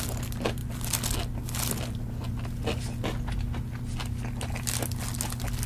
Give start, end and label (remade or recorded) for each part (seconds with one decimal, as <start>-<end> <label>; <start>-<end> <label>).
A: 0.0-5.7 recorded